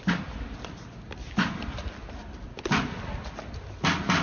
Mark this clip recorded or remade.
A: recorded